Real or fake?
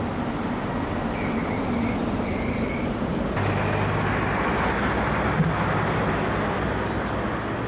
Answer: real